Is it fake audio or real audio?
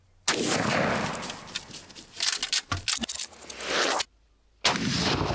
real